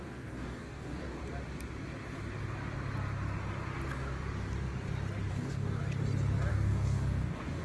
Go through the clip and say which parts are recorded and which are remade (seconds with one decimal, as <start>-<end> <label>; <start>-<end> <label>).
0.0-1.2 remade; 1.2-5.3 recorded; 5.3-5.8 remade; 5.8-6.5 recorded; 6.5-7.6 remade